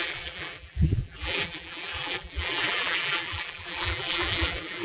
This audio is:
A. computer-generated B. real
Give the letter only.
A